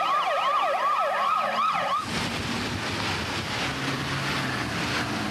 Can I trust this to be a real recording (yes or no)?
yes